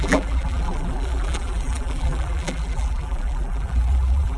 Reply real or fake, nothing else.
fake